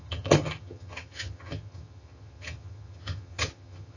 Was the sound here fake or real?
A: fake